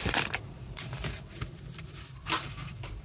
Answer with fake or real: fake